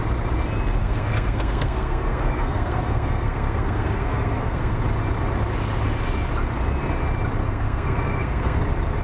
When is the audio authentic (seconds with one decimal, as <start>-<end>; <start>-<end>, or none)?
0.0-0.8; 4.8-7.4; 8.6-9.0